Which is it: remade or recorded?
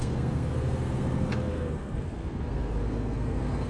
remade